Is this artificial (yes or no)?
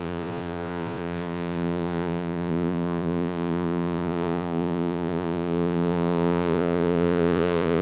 yes